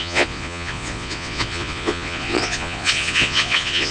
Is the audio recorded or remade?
remade